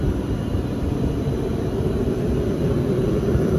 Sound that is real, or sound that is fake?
fake